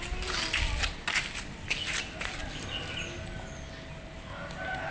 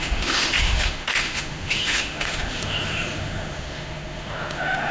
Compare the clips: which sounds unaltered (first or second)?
first